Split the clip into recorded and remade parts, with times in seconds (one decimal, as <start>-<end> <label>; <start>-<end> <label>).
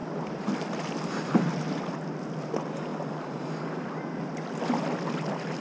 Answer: 0.0-5.6 recorded